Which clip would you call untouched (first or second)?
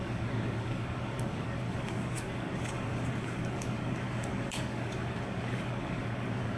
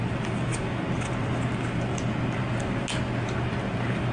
second